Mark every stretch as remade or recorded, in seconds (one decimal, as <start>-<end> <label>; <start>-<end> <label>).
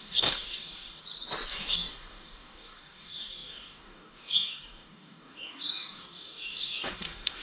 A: 0.0-1.0 remade; 1.0-1.5 recorded; 1.5-7.4 remade